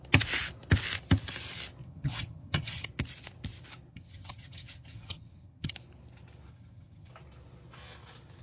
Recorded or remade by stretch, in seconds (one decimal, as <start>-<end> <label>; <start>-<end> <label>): 0.0-1.8 recorded; 1.8-2.9 remade; 2.9-3.9 recorded; 3.9-5.7 remade; 5.7-6.5 recorded; 6.5-7.1 remade; 7.1-8.4 recorded